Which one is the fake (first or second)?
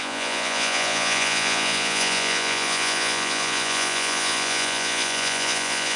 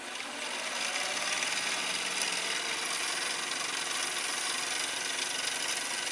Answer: first